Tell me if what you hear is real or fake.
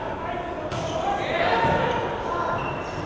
real